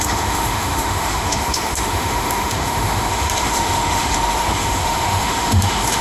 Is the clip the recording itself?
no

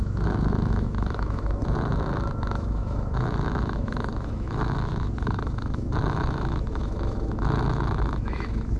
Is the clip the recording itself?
no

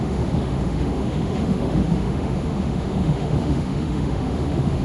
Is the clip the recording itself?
no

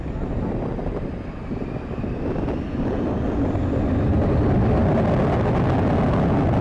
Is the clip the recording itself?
yes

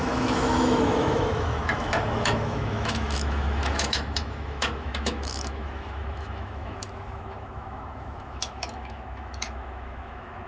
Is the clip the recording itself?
no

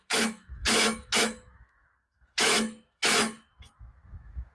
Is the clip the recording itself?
no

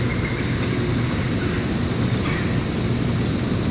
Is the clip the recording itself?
yes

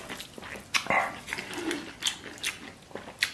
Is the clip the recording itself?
yes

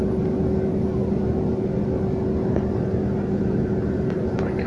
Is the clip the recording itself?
yes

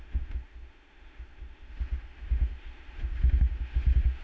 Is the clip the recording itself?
no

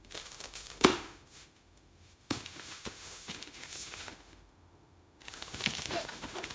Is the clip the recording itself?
no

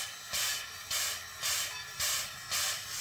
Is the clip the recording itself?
yes